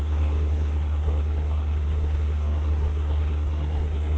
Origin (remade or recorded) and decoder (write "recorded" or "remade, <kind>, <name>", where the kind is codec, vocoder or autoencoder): remade, codec, SNAC